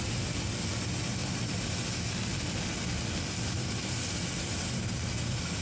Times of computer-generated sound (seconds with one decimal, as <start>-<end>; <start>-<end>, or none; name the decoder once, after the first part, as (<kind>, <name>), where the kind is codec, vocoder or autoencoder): none